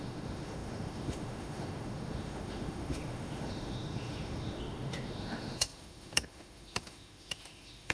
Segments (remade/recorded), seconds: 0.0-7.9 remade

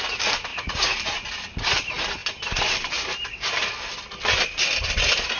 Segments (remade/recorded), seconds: 0.0-0.5 recorded; 0.5-1.0 remade; 1.0-5.4 recorded